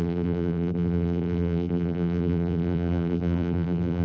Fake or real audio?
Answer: fake